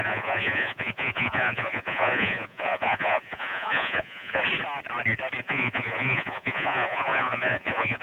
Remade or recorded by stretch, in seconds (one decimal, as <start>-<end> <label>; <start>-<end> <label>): 0.0-4.4 remade; 4.4-5.4 recorded; 5.4-8.0 remade